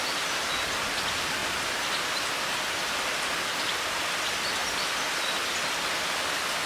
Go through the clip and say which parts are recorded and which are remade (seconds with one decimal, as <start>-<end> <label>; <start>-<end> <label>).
0.0-6.7 recorded